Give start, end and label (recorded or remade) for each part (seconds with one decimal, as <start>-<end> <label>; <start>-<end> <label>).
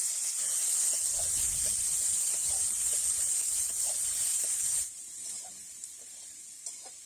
0.0-2.0 recorded; 2.0-5.5 remade; 5.5-7.1 recorded